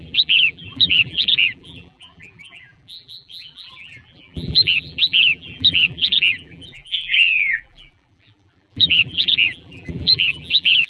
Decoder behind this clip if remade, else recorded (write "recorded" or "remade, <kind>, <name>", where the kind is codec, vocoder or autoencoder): remade, vocoder, BigVGAN v2